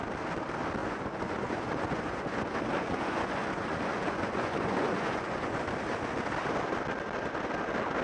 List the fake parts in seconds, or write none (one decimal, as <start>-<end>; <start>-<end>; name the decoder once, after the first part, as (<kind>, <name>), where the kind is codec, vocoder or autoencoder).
0.8-5.6 (vocoder, Vocos)